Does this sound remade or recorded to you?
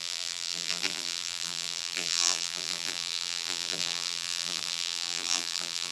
remade